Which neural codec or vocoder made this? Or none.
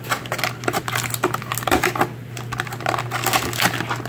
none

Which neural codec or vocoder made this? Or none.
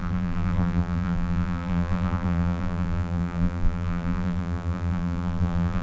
vocoder, BigVGAN v2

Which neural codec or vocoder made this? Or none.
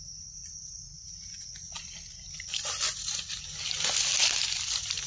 none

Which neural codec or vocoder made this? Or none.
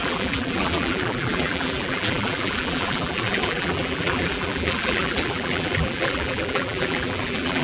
vocoder, BigVGAN v2